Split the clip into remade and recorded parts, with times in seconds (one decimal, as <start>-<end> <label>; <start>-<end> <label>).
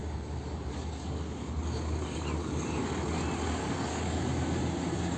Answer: 0.0-2.9 remade; 2.9-3.6 recorded; 3.6-4.2 remade; 4.2-5.2 recorded